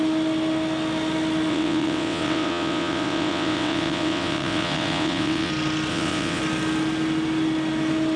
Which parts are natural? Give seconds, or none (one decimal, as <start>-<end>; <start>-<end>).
0.0-1.5; 5.5-5.9; 6.4-8.2